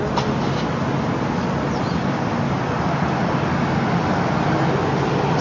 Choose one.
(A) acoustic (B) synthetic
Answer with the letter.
A